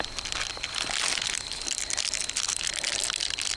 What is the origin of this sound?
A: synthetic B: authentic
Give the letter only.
B